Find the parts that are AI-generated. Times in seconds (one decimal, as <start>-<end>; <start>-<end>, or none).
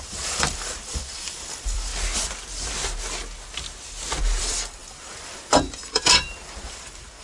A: 0.0-1.9; 4.2-7.2